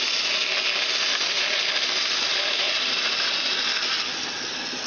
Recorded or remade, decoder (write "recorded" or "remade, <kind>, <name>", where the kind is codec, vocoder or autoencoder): recorded